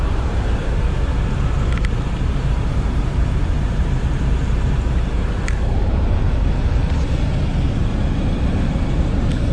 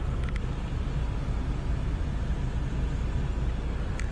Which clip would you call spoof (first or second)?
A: first